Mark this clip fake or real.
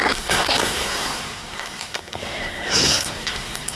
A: fake